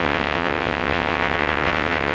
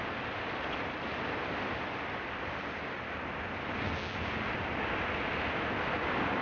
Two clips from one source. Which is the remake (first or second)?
first